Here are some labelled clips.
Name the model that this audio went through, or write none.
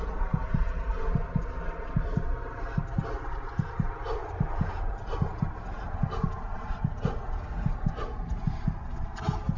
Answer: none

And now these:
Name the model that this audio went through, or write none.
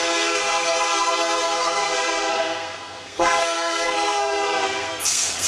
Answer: codec, SNAC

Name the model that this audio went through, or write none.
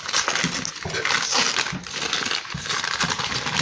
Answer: none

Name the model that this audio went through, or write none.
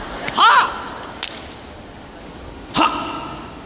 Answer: none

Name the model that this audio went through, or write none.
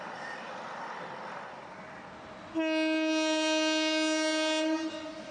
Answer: none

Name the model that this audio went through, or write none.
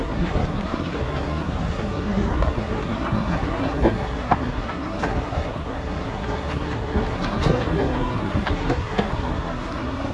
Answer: codec, SNAC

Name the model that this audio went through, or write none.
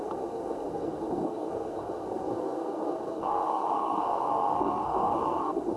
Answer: codec, SNAC